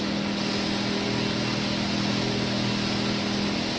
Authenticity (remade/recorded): recorded